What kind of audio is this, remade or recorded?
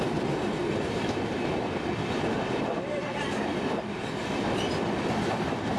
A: recorded